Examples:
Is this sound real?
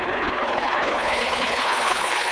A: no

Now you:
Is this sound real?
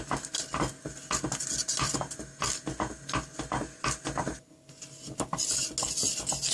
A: yes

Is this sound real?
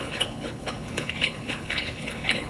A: no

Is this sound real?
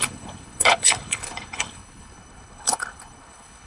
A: no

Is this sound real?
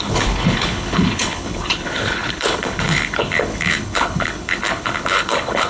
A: no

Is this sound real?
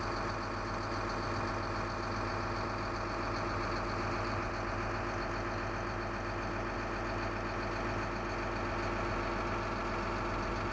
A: yes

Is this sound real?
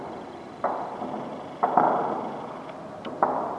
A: yes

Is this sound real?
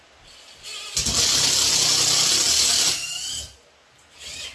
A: yes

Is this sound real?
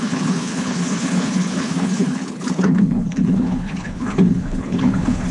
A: no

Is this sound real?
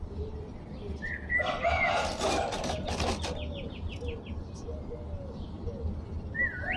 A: yes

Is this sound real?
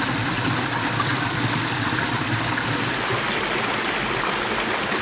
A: yes